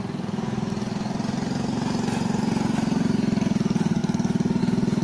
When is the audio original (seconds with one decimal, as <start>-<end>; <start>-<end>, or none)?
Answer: 0.0-5.0